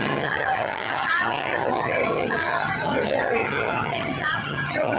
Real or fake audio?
fake